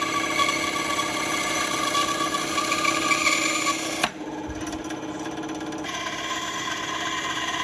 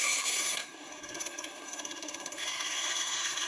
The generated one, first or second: second